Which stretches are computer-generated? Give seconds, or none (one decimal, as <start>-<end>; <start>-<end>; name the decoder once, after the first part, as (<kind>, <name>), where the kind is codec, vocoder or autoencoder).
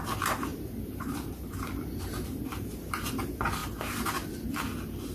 0.5-3.1 (vocoder, BigVGAN v2)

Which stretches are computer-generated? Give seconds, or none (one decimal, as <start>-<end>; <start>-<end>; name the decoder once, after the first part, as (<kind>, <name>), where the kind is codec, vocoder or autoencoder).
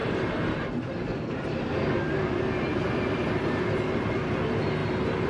2.7-3.3 (vocoder, BigVGAN v2); 4.8-5.3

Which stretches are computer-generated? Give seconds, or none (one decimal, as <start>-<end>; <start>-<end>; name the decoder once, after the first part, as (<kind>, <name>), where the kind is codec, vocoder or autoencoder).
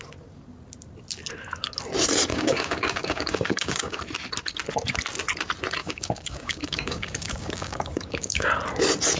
2.3-4.0 (codec, DAC); 5.8-8.5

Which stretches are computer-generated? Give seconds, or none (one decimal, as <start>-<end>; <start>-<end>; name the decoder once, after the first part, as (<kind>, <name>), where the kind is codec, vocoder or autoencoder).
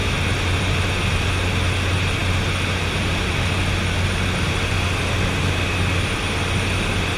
none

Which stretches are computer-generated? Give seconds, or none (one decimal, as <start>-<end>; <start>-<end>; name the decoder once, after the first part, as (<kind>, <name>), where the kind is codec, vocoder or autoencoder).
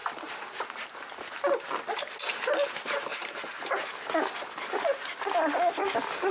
3.1-3.7 (vocoder, BigVGAN v2)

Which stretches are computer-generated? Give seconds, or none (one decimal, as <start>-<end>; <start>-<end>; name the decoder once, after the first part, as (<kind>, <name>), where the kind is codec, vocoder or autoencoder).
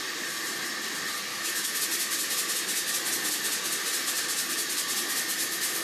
1.3-1.8 (autoencoder, DAC-VAE)